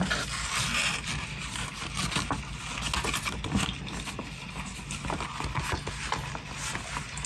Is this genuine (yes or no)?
yes